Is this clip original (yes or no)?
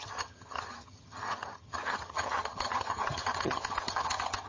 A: no